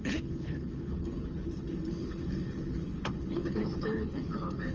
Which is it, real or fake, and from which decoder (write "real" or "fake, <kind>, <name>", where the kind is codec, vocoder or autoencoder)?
fake, codec, HILCodec